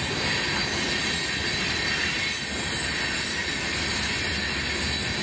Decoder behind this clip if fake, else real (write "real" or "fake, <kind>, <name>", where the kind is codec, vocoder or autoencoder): real